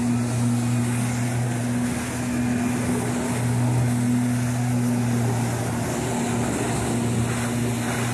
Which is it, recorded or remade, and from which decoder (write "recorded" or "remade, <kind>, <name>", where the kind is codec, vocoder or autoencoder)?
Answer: recorded